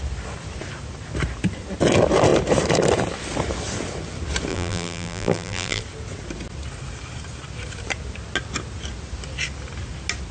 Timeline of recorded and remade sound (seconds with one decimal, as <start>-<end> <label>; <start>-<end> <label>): 0.0-4.5 recorded; 4.5-5.8 remade; 5.8-10.3 recorded